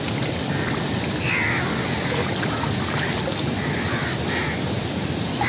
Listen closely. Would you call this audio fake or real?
real